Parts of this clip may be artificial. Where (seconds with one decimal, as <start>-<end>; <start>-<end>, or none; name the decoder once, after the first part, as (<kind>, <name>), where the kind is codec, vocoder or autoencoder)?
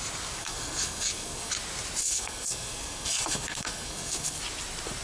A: 0.4-1.5 (codec, SNAC); 2.0-4.4